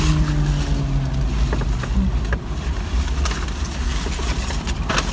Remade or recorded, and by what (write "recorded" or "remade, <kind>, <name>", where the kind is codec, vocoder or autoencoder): recorded